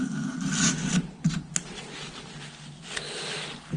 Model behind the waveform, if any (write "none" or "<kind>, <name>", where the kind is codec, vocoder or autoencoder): none